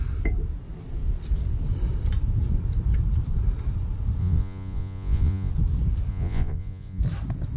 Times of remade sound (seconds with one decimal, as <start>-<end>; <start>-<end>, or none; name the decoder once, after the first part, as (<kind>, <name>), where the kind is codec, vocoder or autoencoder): 4.2-5.5 (vocoder, Vocos); 6.1-7.0